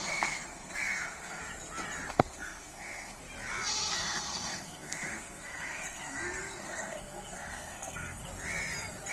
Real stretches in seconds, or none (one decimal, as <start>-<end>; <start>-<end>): 1.4-2.1; 3.2-3.9; 8.2-9.1